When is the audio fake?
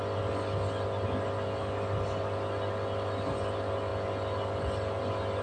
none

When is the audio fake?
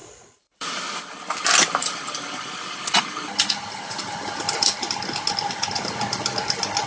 0.0-0.8 (vocoder, BigVGAN v2); 1.8-4.7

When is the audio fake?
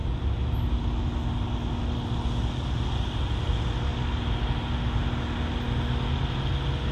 none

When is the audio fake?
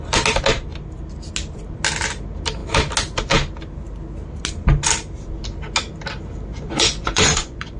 6.5-7.8 (vocoder, Vocos)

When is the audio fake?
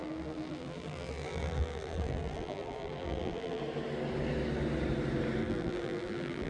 0.0-3.6 (vocoder, BigVGAN v2); 5.4-6.5